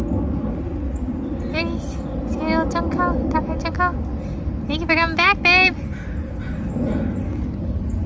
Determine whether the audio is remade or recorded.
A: recorded